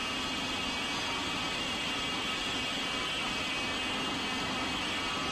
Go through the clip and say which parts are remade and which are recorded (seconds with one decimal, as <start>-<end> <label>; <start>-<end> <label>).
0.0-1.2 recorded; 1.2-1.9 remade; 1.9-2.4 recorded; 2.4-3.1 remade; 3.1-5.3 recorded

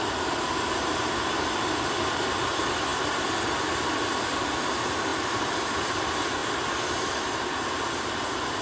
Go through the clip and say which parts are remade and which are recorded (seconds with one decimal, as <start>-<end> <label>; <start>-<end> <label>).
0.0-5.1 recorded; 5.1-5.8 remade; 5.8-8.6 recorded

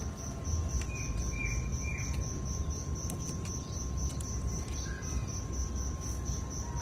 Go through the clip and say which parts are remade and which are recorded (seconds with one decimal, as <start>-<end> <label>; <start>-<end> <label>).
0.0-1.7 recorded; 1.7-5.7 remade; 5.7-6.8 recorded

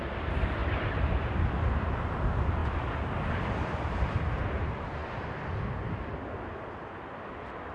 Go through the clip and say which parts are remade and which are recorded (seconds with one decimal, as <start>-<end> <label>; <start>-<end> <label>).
0.0-0.6 recorded; 0.6-1.5 remade; 1.5-7.7 recorded